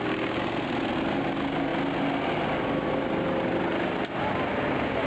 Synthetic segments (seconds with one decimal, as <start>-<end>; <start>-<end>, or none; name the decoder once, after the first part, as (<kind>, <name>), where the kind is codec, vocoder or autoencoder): none